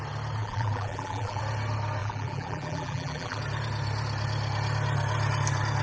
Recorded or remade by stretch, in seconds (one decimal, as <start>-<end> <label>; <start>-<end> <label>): 0.0-0.4 recorded; 0.4-1.4 remade; 1.4-2.0 recorded; 2.0-3.4 remade; 3.4-5.8 recorded